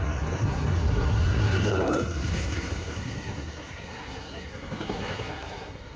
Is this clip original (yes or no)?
no